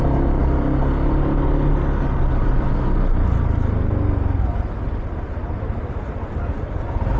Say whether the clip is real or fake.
real